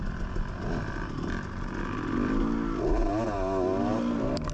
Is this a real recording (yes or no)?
yes